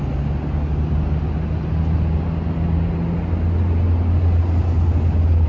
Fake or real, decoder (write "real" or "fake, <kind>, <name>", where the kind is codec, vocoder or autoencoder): real